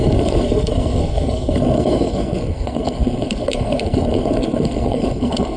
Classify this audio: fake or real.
fake